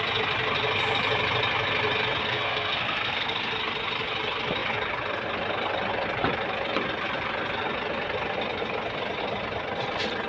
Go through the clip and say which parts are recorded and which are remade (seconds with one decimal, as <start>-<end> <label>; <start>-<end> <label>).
0.0-2.2 recorded; 2.2-3.3 remade; 3.3-10.3 recorded